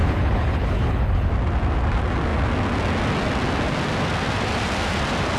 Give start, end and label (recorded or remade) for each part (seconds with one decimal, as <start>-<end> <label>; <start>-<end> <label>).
0.0-1.3 remade; 1.3-5.4 recorded